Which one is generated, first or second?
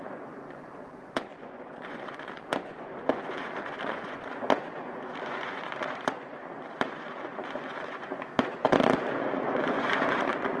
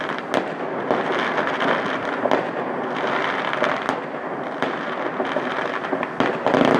first